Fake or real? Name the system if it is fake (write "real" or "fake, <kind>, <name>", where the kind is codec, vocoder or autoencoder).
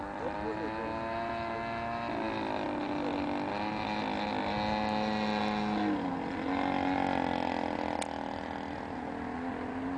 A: real